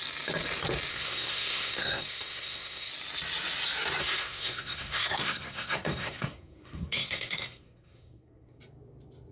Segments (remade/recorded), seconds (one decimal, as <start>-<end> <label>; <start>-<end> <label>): 0.0-0.9 recorded; 0.9-2.9 remade; 2.9-4.0 recorded; 4.0-8.6 remade; 8.6-9.3 recorded